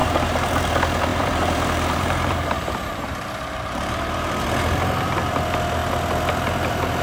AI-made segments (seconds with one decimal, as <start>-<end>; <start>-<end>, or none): 0.0-0.7; 1.1-4.3